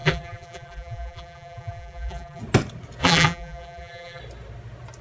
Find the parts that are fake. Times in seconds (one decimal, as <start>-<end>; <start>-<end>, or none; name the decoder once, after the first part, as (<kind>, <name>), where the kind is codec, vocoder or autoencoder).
0.0-2.4 (vocoder, BigVGAN v2); 3.0-4.2